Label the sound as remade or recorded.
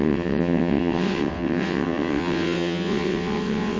remade